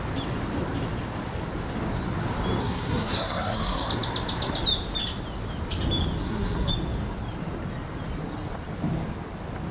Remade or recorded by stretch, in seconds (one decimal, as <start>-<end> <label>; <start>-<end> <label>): 0.0-2.6 recorded; 2.6-3.9 remade; 3.9-6.2 recorded; 6.2-6.7 remade; 6.7-9.7 recorded